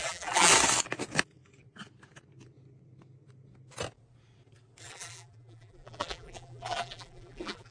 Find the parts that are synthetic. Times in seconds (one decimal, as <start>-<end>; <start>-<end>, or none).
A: 0.0-0.5; 4.8-7.7